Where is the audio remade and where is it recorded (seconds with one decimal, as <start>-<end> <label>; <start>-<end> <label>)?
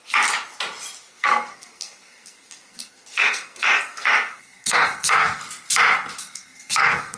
0.0-1.1 recorded; 1.1-5.4 remade; 5.4-6.2 recorded; 6.2-7.2 remade